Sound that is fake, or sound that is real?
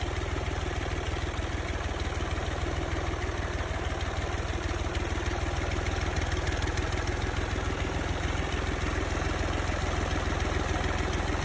real